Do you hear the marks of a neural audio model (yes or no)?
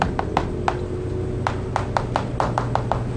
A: no